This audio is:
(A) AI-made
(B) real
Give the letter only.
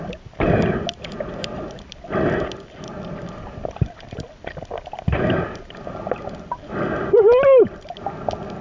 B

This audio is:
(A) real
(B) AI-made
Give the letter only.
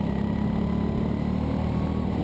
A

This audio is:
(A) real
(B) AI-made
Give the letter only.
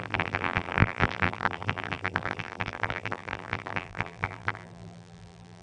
B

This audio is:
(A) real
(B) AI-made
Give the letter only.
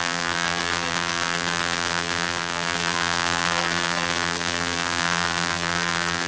B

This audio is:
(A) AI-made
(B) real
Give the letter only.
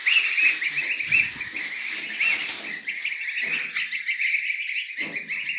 B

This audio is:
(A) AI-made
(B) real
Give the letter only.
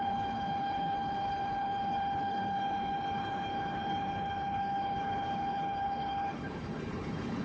A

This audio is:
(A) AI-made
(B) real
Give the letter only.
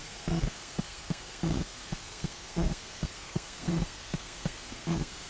A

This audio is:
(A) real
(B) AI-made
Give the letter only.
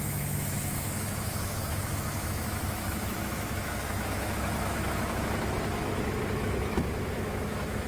B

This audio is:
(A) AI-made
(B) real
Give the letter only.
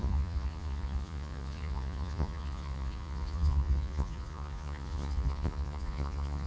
A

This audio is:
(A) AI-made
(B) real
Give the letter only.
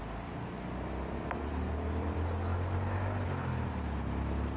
B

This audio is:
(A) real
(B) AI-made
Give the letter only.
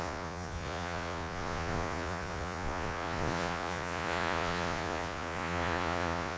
B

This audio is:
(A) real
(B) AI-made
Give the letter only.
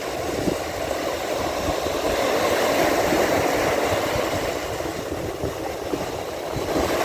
A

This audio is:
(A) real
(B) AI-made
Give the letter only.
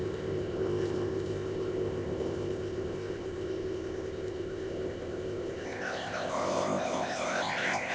B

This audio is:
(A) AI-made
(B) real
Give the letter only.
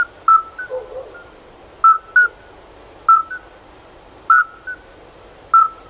B